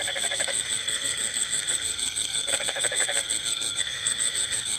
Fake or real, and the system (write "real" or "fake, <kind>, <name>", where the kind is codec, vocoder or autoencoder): fake, codec, SNAC